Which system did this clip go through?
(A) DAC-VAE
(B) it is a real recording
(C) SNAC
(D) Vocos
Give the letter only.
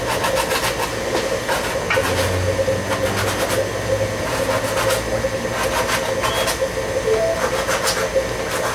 B